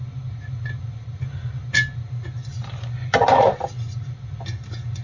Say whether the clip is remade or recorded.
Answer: recorded